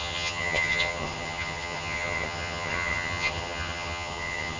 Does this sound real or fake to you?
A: fake